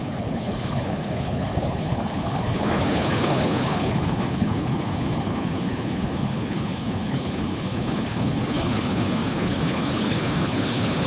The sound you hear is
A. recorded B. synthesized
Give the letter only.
B